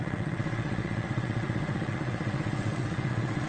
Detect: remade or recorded remade